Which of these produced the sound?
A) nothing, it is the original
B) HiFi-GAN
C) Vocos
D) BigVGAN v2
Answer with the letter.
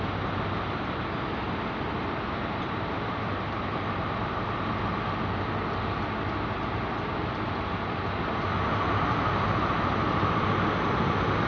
A